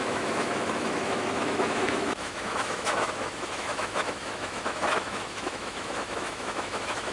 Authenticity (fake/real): fake